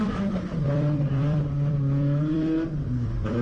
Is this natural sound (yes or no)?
no